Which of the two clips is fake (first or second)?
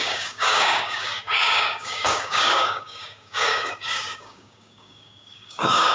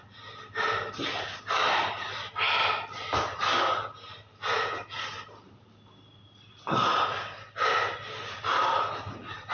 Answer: first